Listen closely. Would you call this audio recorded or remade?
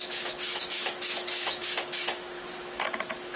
remade